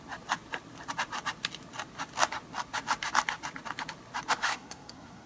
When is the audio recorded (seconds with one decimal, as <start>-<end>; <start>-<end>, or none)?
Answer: 0.0-4.4